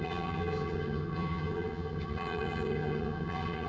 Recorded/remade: remade